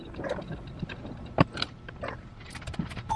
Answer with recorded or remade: remade